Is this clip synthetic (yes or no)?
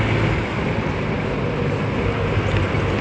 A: no